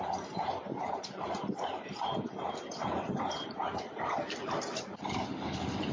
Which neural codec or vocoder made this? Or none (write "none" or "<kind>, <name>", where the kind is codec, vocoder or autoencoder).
vocoder, BigVGAN v2